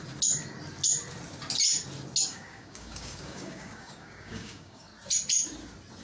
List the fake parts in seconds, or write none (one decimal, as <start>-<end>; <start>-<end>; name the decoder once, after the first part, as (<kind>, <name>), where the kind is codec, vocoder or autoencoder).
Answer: 2.2-4.9 (codec, DAC)